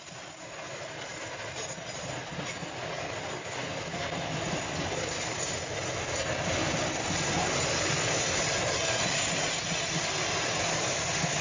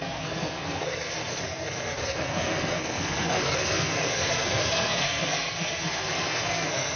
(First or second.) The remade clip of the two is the second